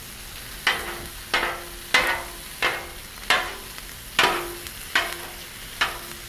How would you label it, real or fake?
real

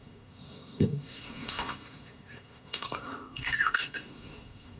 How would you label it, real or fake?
fake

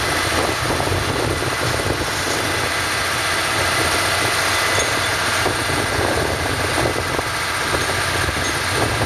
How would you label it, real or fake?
real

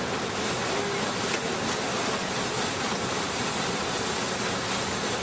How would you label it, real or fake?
real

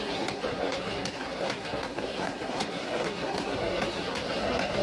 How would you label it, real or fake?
fake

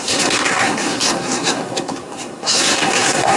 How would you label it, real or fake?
fake